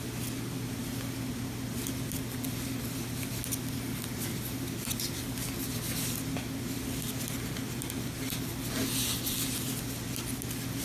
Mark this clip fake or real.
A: real